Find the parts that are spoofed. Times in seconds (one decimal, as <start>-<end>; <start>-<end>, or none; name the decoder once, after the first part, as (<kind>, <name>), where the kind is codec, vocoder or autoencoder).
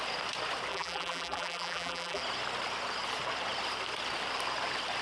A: 0.7-2.2 (vocoder, BigVGAN v2)